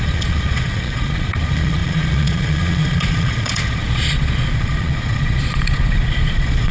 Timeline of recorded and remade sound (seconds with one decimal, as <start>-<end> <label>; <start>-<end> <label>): 0.0-6.7 remade